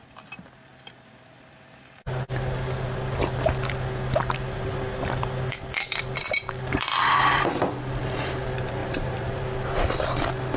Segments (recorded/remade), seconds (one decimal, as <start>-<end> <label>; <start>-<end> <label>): 0.0-8.8 recorded; 8.8-9.4 remade; 9.4-10.6 recorded